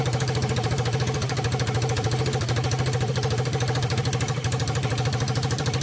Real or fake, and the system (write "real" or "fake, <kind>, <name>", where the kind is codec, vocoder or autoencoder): fake, vocoder, BigVGAN v2